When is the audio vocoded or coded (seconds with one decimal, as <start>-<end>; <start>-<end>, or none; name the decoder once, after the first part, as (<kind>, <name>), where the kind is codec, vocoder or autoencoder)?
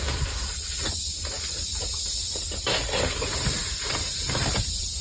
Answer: 3.6-5.0 (vocoder, BigVGAN v2)